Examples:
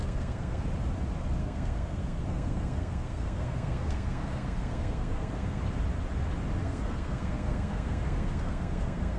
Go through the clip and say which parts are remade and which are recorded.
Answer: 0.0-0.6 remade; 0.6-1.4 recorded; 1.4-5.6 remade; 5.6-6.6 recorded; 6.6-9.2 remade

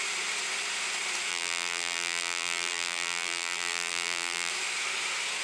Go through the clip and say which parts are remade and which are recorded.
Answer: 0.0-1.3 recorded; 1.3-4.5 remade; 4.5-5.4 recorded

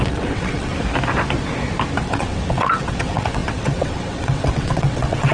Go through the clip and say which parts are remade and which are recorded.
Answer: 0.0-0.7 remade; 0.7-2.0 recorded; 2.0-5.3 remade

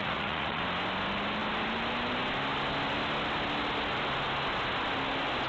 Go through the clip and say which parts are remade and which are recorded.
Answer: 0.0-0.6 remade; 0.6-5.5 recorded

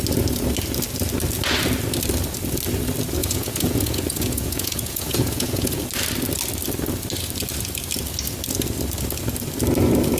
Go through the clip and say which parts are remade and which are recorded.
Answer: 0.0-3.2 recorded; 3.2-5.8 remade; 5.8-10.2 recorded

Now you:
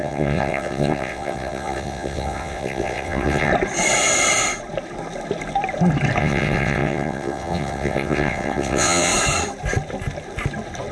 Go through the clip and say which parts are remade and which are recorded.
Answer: 0.0-3.5 remade; 3.5-6.2 recorded; 6.2-9.1 remade; 9.1-10.9 recorded